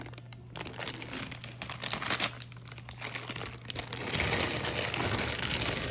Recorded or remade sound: recorded